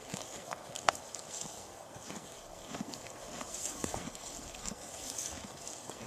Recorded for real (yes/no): no